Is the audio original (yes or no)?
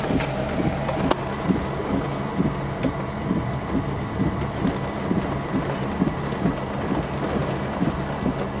yes